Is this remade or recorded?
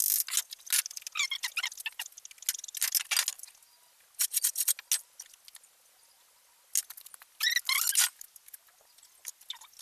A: recorded